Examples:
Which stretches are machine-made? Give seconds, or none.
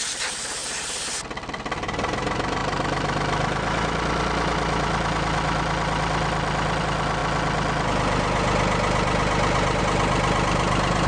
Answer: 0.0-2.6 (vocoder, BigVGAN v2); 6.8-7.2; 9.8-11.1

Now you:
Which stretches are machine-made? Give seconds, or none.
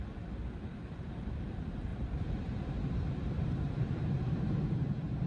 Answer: 0.7-1.3 (vocoder, BigVGAN v2); 1.9-5.3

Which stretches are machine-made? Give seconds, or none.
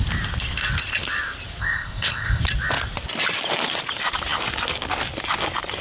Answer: 1.6-2.4 (codec, ZipCodec)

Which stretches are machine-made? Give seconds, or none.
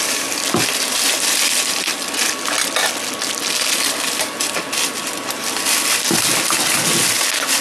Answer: none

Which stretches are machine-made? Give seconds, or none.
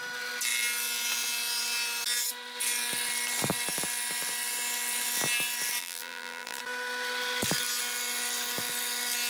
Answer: 5.8-6.6 (vocoder, BigVGAN v2)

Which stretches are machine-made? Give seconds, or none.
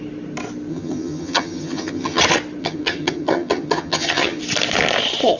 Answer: 0.7-2.2 (vocoder, HiFi-GAN); 2.6-4.4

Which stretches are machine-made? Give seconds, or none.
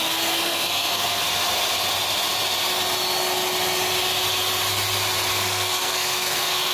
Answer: 0.0-1.3 (codec, SNAC); 5.3-6.7